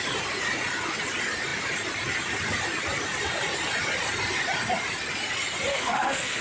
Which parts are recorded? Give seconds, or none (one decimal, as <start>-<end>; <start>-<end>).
0.0-5.7